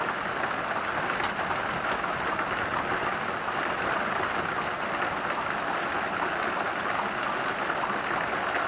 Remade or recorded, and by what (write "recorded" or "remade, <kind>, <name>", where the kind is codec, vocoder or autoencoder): recorded